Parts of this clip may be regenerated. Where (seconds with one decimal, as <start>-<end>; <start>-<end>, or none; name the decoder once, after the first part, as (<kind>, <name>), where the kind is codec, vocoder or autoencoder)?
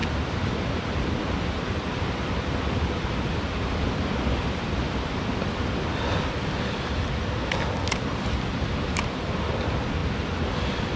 none